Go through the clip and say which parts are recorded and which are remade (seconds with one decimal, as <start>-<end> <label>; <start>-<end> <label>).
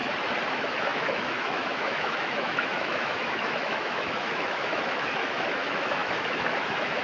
0.0-0.5 recorded; 0.5-7.0 remade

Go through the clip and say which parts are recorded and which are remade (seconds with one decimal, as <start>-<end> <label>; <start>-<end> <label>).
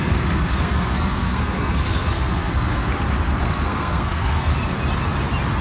0.0-2.9 remade; 2.9-3.4 recorded; 3.4-4.5 remade; 4.5-5.6 recorded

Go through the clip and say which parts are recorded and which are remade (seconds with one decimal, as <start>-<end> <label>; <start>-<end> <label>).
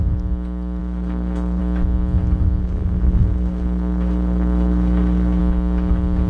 0.0-0.8 recorded; 0.8-1.6 remade; 1.6-2.6 recorded; 2.6-5.4 remade; 5.4-6.3 recorded